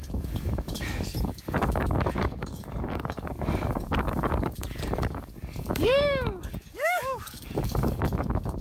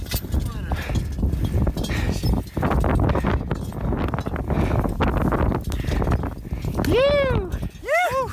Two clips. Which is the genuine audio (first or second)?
second